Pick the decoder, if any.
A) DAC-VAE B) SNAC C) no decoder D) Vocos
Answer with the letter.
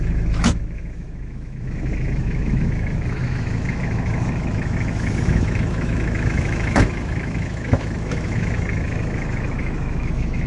A